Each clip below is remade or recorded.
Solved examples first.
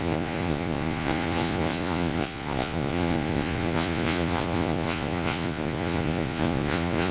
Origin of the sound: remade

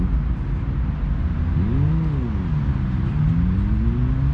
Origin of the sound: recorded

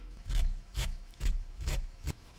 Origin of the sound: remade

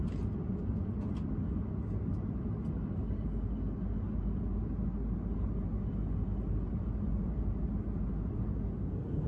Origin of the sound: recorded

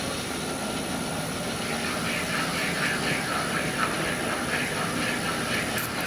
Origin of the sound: recorded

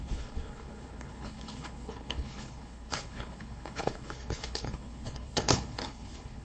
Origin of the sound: remade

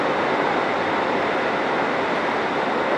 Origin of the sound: recorded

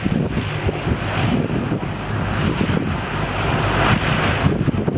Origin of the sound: recorded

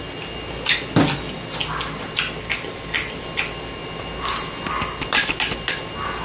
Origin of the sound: recorded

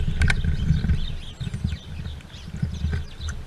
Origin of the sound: recorded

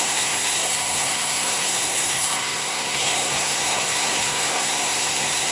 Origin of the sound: remade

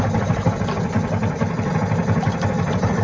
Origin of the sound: recorded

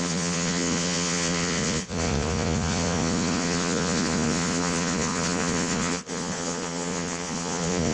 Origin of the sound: remade